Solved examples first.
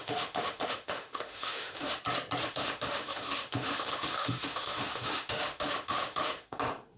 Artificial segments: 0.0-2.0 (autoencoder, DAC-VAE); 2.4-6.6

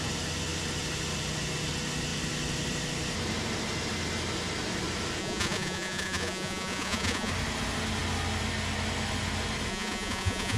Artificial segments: 5.2-7.3 (vocoder, Vocos); 9.7-10.6

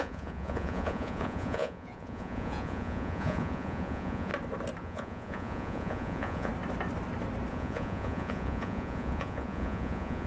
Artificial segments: 0.0-4.3 (vocoder, Vocos); 4.8-6.5; 7.5-10.3

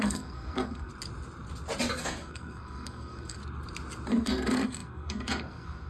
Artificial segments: 0.0-0.9 (codec, SNAC); 2.0-3.4; 4.1-5.9